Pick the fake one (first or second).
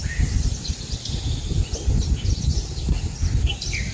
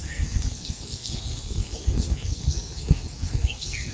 second